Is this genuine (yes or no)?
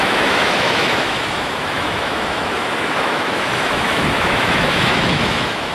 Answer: no